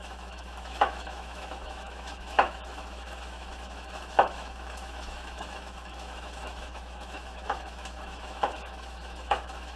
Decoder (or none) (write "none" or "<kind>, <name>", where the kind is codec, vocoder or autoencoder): autoencoder, DAC-VAE